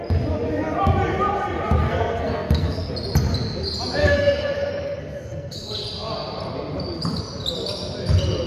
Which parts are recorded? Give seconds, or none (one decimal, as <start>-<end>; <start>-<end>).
0.0-1.8; 2.9-4.0; 5.7-8.5